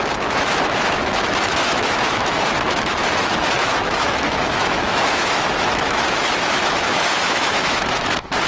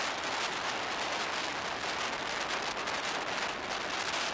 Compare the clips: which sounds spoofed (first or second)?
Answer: first